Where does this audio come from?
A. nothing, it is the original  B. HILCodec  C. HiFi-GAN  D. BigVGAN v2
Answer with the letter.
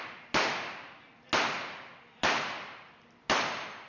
A